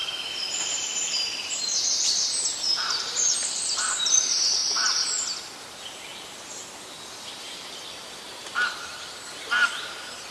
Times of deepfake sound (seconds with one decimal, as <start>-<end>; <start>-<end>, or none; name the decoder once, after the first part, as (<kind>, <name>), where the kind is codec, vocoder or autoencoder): 0.0-4.6 (vocoder, BigVGAN v2); 5.6-6.1; 8.4-10.3